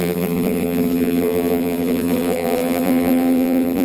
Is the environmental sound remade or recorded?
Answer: remade